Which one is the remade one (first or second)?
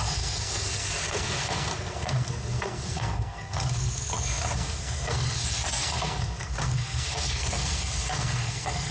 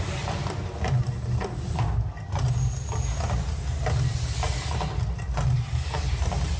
first